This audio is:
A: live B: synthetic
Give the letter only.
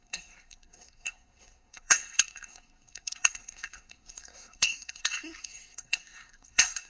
B